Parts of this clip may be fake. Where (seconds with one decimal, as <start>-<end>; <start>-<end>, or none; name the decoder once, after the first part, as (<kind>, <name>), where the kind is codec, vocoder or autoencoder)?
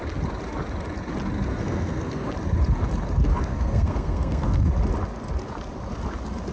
1.5-2.3 (codec, SNAC); 3.3-4.7